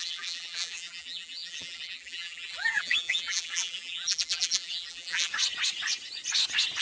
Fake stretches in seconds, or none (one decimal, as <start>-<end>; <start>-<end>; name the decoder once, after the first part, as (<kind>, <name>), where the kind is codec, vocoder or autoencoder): 0.0-5.3 (vocoder, BigVGAN v2)